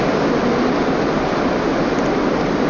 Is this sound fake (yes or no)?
no